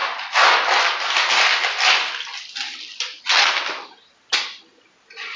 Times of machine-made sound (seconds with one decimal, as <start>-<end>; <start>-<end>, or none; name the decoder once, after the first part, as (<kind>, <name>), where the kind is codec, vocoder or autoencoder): none